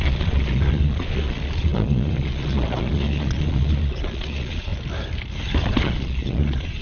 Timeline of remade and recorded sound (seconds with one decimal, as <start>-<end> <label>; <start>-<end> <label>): 0.0-4.7 remade; 4.7-5.8 recorded; 5.8-6.8 remade